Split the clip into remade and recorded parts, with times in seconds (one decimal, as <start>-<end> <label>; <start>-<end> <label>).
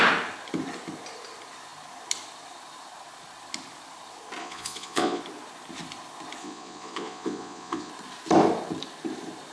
0.0-4.4 recorded; 4.4-5.2 remade; 5.2-6.4 recorded; 6.4-7.9 remade; 7.9-9.5 recorded